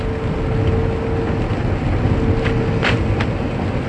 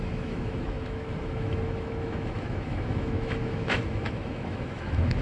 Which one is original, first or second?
first